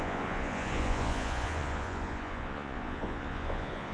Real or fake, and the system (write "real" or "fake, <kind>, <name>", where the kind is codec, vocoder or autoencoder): fake, vocoder, Vocos